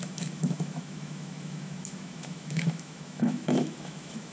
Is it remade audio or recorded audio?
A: remade